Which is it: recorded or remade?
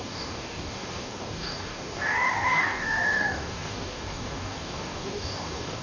remade